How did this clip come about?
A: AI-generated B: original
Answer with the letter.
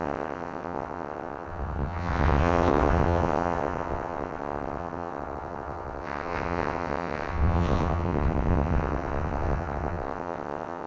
A